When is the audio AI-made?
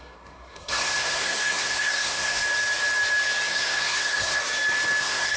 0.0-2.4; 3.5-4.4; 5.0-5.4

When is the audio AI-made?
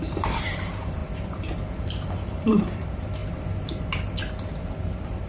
0.0-1.0; 1.8-3.2; 4.4-5.3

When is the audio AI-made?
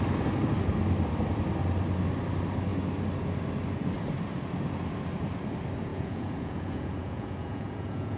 5.9-8.2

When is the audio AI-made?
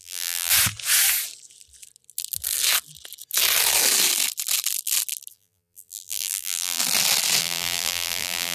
0.0-0.5; 5.3-6.8; 7.4-8.5